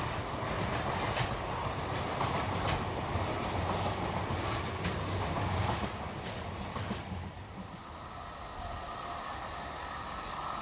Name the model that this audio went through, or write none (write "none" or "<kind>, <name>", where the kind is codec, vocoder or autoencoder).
none